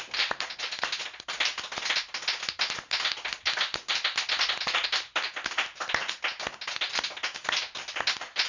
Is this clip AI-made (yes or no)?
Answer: no